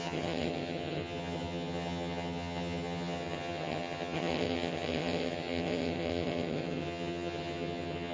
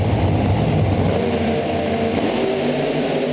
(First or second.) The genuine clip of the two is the second